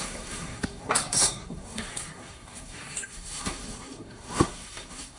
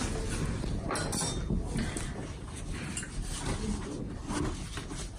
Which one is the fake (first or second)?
first